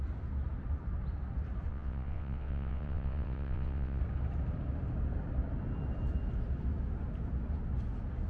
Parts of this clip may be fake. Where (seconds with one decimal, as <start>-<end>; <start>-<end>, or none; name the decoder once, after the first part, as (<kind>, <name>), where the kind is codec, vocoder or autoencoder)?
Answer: 1.7-4.0 (vocoder, WaveNeXt)